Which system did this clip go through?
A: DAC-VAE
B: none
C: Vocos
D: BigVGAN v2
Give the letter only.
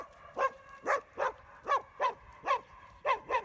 B